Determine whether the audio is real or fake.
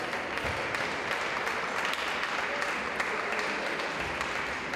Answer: real